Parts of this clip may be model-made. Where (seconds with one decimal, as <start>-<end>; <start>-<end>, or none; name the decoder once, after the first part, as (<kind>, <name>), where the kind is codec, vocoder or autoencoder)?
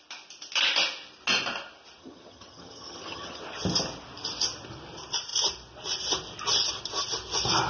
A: 2.0-3.4 (vocoder, HiFi-GAN)